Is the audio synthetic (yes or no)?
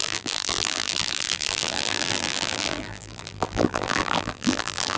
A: yes